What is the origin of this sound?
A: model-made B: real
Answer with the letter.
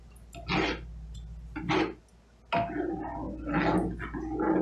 B